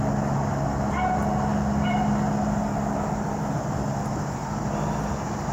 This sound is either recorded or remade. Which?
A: recorded